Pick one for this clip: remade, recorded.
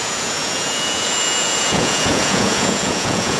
remade